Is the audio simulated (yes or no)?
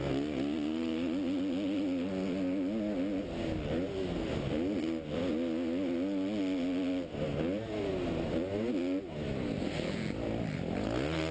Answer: no